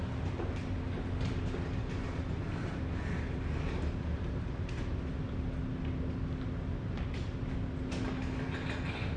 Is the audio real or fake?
real